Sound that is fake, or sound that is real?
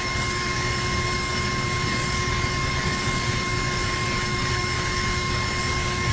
fake